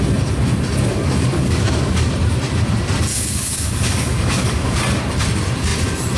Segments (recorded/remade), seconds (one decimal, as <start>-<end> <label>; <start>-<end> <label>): 0.0-0.9 recorded; 0.9-2.1 remade; 2.1-3.1 recorded; 3.1-4.8 remade; 4.8-6.2 recorded